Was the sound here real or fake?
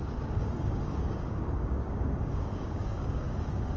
fake